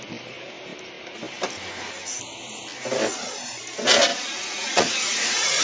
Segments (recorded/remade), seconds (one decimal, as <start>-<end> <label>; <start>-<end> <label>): 0.0-4.1 recorded; 4.1-5.6 remade